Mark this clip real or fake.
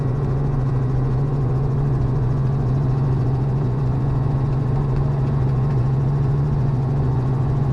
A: fake